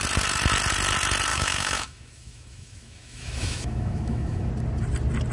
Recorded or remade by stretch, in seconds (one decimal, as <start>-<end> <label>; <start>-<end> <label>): 0.0-1.3 recorded; 1.3-4.5 remade; 4.5-5.3 recorded